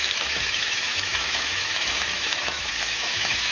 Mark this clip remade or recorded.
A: remade